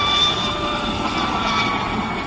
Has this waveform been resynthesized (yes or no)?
no